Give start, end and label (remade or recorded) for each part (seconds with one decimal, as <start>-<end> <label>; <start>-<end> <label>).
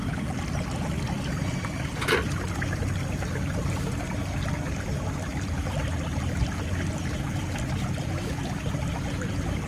0.0-9.7 recorded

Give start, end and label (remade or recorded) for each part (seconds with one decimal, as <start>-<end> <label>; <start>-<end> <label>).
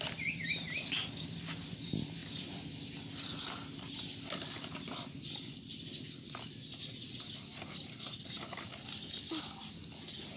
0.0-10.4 recorded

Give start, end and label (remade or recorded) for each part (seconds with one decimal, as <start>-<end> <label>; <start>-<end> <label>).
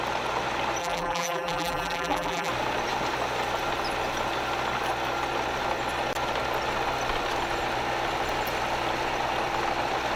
0.0-0.8 recorded; 0.8-2.5 remade; 2.5-10.2 recorded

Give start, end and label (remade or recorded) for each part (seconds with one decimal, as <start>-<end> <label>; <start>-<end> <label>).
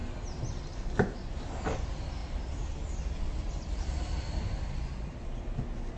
0.0-2.2 recorded; 2.2-3.0 remade; 3.0-3.4 recorded; 3.4-5.2 remade; 5.2-6.0 recorded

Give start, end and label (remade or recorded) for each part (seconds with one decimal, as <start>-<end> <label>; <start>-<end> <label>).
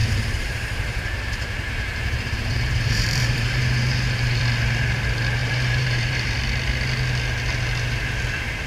0.0-4.4 remade; 4.4-5.4 recorded; 5.4-6.4 remade; 6.4-8.7 recorded